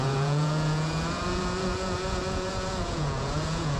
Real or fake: fake